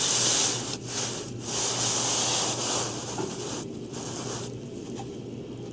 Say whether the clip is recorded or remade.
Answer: recorded